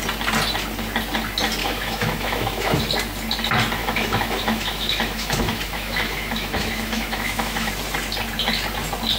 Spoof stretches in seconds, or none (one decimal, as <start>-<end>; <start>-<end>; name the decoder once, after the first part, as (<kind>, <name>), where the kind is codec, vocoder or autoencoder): 1.6-2.8 (autoencoder, DAC-VAE); 3.8-7.7